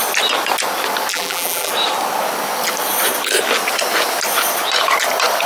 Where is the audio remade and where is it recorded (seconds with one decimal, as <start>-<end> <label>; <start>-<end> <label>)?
0.0-1.1 recorded; 1.1-1.7 remade; 1.7-5.5 recorded